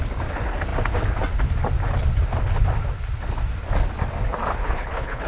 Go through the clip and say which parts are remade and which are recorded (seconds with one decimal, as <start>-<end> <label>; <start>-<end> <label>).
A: 0.0-4.6 recorded; 4.6-5.3 remade